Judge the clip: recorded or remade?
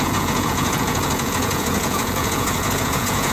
remade